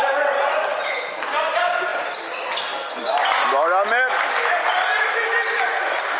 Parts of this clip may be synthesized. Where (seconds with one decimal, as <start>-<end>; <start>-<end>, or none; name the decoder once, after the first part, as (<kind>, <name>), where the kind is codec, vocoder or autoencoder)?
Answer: none